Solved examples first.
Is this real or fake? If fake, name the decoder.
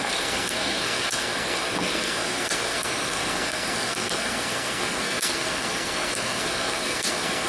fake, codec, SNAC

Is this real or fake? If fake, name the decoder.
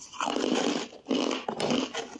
real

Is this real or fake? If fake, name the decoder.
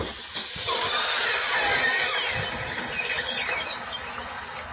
real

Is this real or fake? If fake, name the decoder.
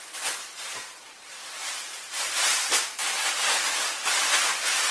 real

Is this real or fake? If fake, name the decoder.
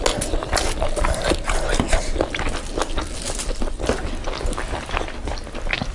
real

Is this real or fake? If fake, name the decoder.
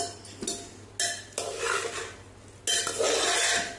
real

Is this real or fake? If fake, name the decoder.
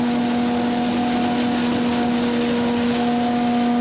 real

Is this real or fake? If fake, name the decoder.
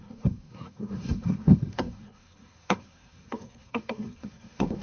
fake, codec, SNAC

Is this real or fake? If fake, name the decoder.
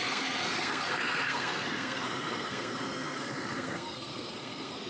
fake, codec, SNAC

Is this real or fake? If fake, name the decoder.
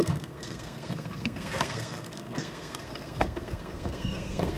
fake, codec, SNAC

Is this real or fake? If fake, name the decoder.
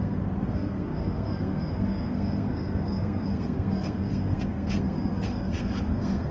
fake, codec, SNAC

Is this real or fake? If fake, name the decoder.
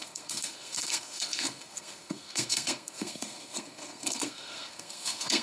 fake, codec, SNAC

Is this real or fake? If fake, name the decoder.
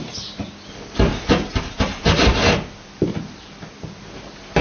real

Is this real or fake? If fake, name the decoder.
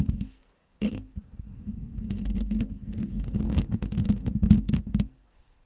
fake, codec, SNAC